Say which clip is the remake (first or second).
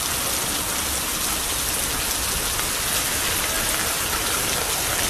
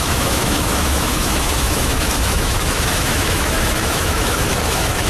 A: second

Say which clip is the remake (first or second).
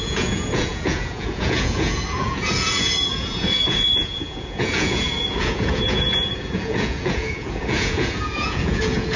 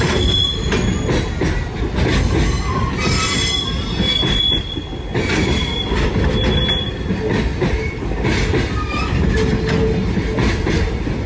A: first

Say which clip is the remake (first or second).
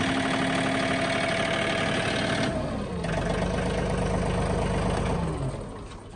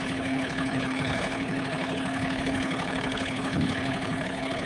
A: second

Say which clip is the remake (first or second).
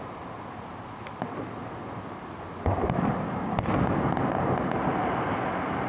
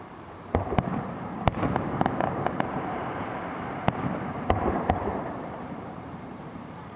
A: second